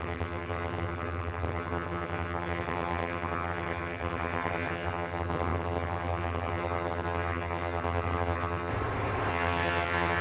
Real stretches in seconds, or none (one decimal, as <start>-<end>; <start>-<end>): 8.7-9.3